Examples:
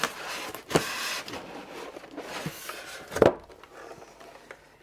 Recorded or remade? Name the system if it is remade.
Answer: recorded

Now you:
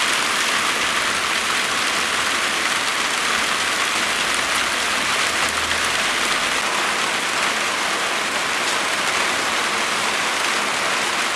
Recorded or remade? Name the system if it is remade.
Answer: recorded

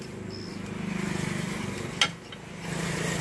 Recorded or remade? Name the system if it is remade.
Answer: recorded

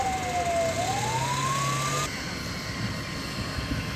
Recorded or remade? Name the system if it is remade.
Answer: recorded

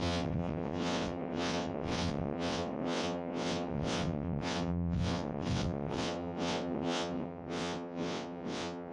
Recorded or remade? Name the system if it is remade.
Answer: remade, vocoder, WaveNeXt